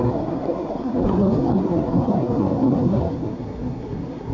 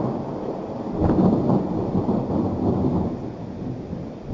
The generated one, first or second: first